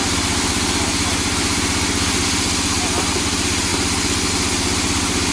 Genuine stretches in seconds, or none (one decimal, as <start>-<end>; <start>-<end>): 0.0-5.3